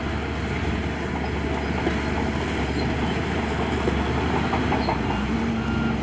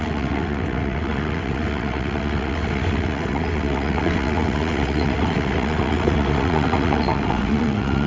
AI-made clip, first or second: second